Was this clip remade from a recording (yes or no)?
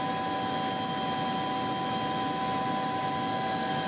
no